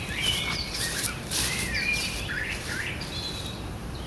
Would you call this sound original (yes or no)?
no